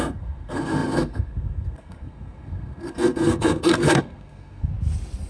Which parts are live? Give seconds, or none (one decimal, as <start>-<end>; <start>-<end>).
4.7-5.3